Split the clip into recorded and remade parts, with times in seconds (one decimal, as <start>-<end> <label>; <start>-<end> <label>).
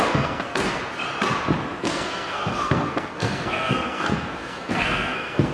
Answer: 0.0-0.8 remade; 0.8-1.8 recorded; 1.8-5.5 remade